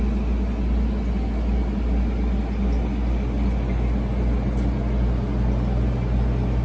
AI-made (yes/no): no